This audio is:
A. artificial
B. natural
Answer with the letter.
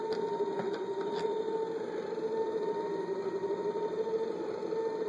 B